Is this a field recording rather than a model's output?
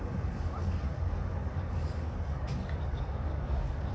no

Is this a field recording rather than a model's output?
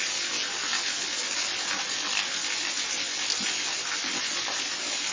yes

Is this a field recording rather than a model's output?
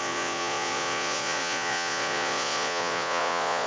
no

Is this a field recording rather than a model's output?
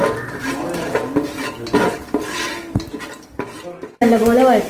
yes